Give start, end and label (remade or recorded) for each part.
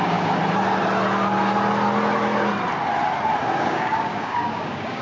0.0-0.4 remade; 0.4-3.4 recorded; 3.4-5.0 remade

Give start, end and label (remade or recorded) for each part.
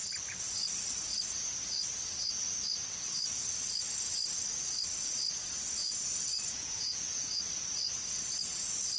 0.0-5.8 recorded; 5.8-7.4 remade; 7.4-9.0 recorded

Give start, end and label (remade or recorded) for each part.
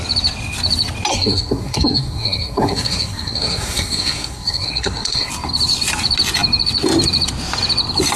0.0-1.1 recorded; 1.1-5.3 remade; 5.3-8.2 recorded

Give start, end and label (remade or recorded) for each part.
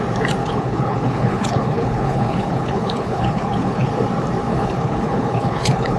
0.0-0.4 recorded; 0.4-3.9 remade; 3.9-4.5 recorded; 4.5-6.0 remade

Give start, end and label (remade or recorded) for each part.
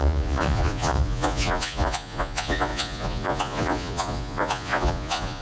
0.0-5.4 remade